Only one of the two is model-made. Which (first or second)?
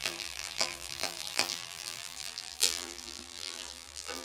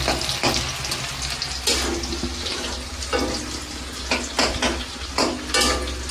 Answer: first